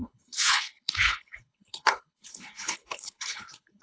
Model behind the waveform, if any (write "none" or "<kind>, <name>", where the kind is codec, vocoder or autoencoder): codec, HILCodec